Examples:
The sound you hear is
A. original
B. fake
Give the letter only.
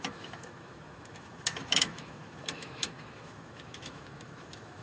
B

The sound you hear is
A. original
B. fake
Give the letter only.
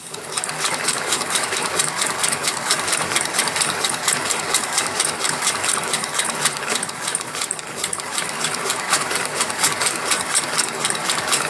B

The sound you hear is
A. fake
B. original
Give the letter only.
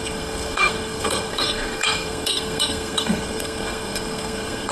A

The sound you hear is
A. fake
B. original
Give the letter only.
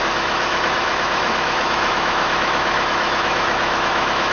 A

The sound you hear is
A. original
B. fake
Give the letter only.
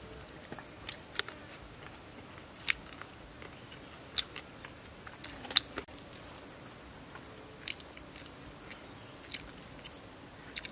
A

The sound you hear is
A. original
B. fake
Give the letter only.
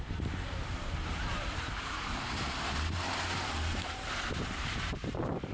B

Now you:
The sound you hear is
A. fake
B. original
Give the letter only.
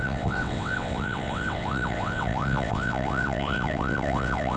A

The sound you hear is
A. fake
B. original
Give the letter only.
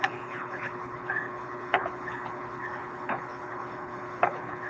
A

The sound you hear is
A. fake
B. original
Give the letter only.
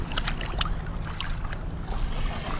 B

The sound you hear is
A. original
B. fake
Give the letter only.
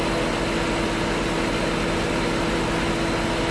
A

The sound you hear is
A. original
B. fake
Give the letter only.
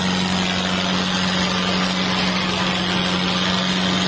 A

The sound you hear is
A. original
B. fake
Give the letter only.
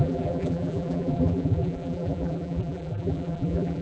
B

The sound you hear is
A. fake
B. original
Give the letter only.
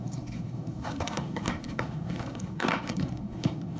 A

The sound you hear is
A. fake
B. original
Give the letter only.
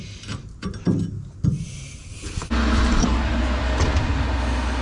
B